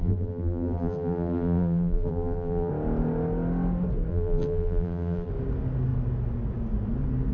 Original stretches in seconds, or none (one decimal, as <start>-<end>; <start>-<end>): 2.7-4.1; 5.3-7.3